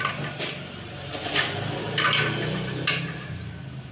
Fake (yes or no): no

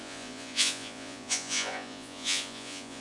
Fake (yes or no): yes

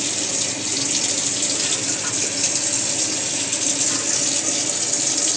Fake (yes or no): no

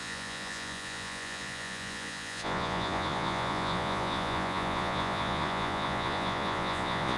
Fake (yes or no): yes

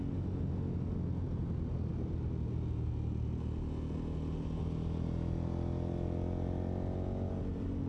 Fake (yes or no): no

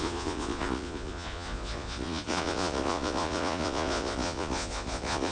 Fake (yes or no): yes